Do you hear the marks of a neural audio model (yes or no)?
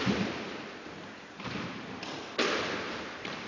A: yes